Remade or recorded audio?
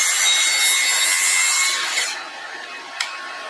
recorded